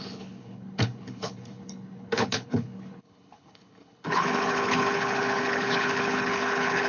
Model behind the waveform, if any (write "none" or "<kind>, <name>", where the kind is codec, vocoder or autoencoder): codec, HILCodec